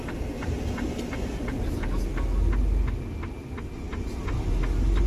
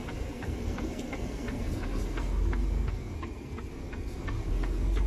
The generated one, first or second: second